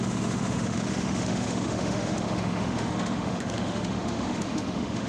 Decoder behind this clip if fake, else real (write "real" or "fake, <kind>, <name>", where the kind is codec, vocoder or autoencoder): fake, autoencoder, DAC-VAE